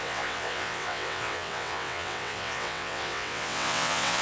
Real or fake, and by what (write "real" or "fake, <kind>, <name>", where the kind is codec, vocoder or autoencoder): fake, vocoder, WaveNeXt